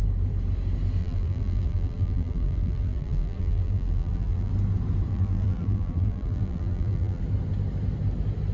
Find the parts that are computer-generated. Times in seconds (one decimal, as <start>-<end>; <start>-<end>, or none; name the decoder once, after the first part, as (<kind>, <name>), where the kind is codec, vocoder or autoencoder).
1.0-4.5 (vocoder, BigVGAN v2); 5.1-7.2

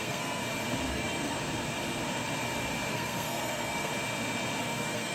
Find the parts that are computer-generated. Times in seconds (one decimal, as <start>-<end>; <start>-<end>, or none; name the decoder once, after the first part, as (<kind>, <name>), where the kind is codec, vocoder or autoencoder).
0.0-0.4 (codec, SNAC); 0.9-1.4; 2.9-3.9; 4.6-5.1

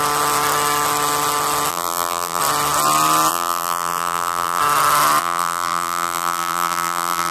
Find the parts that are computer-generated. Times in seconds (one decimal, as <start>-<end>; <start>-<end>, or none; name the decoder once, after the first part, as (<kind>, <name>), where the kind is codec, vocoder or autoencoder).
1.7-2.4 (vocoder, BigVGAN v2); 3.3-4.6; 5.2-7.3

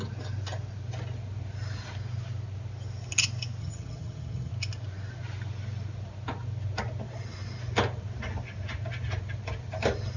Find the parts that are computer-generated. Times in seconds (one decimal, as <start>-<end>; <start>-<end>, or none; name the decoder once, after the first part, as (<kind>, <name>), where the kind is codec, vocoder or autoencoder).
3.6-4.5 (vocoder, HiFi-GAN)